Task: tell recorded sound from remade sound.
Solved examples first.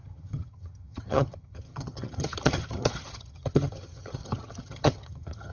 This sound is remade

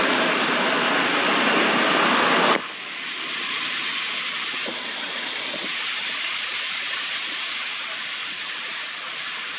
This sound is recorded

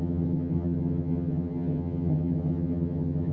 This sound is remade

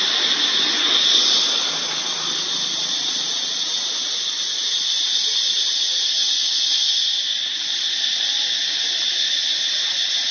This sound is recorded